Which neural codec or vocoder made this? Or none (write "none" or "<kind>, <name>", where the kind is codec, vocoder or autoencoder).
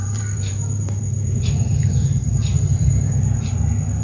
vocoder, BigVGAN v2